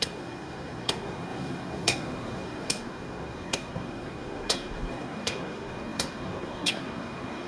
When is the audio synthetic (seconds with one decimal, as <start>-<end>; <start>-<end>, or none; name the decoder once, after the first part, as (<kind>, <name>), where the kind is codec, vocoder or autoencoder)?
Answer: 0.0-7.5 (codec, SNAC)